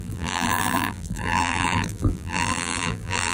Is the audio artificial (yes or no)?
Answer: yes